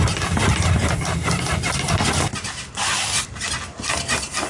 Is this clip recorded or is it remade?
recorded